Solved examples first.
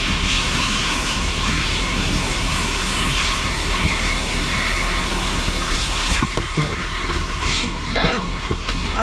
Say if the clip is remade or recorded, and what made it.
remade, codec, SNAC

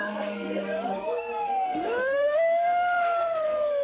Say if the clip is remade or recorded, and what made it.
remade, codec, SNAC